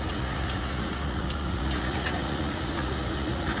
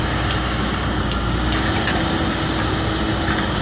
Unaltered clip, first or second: second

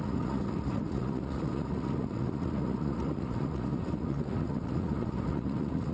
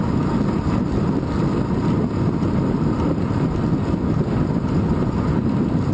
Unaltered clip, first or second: second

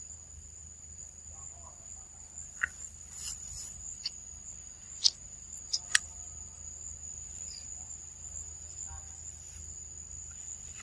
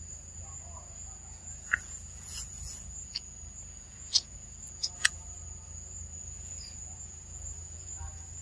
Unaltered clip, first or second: first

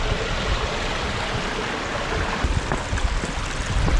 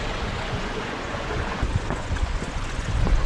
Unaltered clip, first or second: first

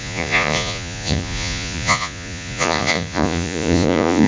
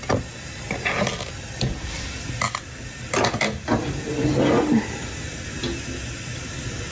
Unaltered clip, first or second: second